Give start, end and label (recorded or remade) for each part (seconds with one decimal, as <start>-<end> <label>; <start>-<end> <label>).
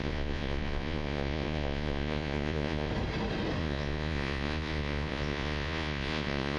0.0-2.9 remade; 2.9-3.6 recorded; 3.6-6.6 remade